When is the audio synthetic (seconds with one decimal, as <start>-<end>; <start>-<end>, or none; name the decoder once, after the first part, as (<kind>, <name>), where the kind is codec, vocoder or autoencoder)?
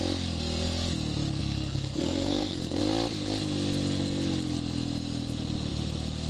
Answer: 1.4-2.8 (codec, SNAC)